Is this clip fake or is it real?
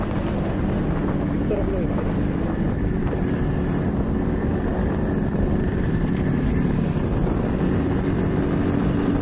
real